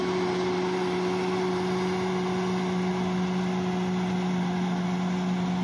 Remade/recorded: recorded